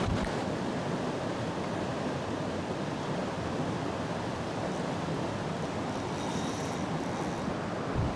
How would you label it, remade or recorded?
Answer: recorded